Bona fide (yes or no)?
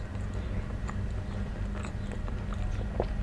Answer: yes